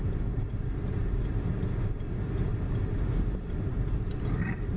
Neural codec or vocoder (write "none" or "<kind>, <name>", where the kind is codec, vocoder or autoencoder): none